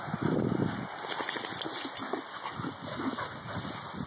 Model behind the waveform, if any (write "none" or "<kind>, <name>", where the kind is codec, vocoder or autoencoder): none